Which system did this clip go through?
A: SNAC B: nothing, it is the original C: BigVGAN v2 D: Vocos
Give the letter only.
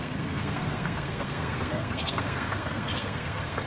A